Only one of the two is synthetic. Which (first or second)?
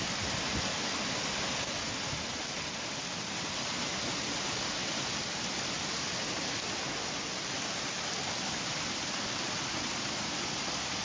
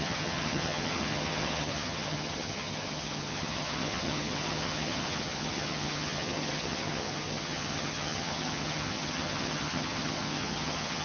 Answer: second